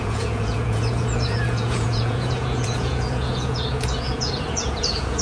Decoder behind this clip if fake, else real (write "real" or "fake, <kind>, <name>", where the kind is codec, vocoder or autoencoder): fake, vocoder, Vocos